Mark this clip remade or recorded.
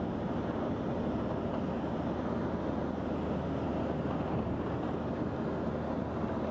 recorded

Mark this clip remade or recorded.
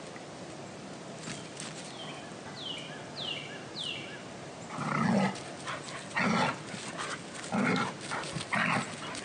recorded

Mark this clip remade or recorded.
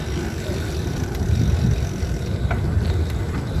recorded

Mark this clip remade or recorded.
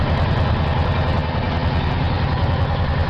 recorded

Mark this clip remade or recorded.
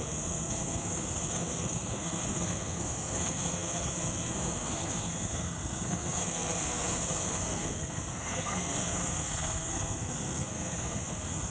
remade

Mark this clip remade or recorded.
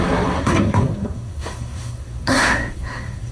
remade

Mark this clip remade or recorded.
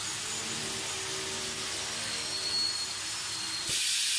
recorded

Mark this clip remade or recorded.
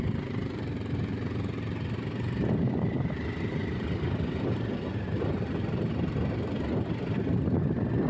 recorded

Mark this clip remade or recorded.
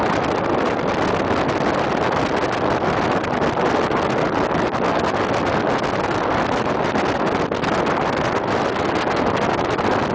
recorded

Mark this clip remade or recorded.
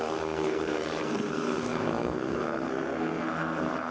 remade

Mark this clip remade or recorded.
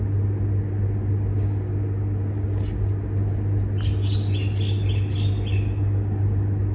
recorded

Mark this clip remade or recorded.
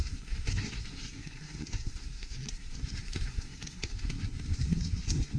remade